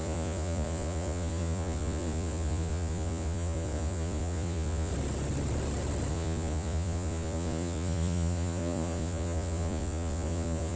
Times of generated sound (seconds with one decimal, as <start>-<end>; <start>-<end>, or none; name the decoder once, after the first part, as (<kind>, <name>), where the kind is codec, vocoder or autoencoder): 0.0-4.9 (vocoder, Vocos); 6.1-10.8